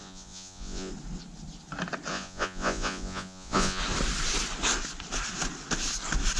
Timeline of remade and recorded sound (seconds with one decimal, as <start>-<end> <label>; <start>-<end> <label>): 0.0-0.9 remade; 0.9-2.1 recorded; 2.1-3.8 remade; 3.8-6.4 recorded